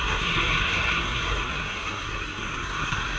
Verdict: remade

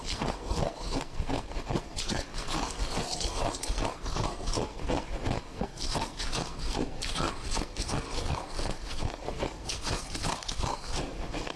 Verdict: remade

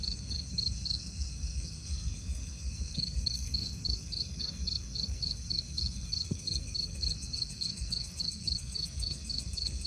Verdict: remade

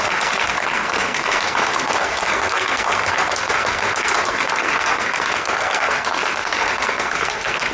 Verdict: remade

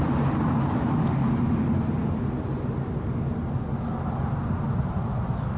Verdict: recorded